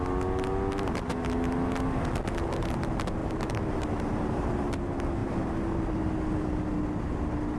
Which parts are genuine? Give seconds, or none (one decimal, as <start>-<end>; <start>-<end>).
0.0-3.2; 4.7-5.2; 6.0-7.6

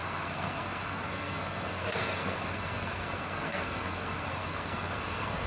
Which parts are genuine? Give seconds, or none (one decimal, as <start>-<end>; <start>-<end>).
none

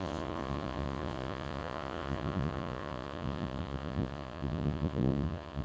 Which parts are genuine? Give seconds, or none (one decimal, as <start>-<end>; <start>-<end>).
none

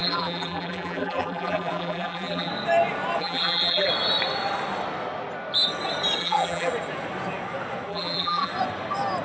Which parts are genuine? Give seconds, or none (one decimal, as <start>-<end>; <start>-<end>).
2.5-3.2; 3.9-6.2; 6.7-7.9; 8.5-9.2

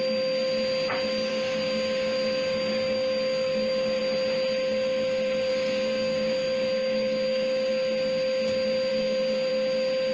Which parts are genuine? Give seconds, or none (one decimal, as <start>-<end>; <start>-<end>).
0.0-1.3; 4.0-5.5; 7.7-8.9; 9.5-10.1

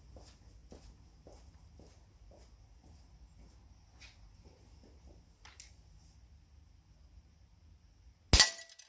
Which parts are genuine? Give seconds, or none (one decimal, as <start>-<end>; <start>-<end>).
0.0-8.9

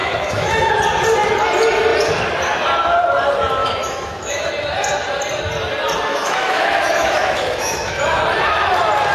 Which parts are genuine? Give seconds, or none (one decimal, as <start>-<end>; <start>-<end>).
0.7-3.6; 4.5-6.1; 8.2-9.1